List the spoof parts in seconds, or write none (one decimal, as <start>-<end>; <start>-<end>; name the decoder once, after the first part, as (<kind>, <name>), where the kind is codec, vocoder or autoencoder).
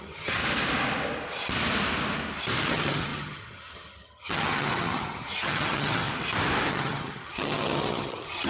0.0-0.4 (vocoder, HiFi-GAN); 2.6-6.1; 6.7-8.5